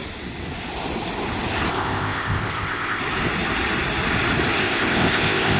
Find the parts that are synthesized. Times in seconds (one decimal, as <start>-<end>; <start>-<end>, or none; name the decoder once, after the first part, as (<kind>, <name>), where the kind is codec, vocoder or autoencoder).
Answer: 1.7-3.0 (codec, ZipCodec); 4.6-5.6